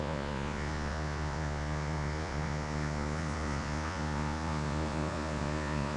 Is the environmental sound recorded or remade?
remade